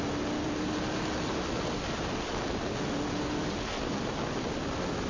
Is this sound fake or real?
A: real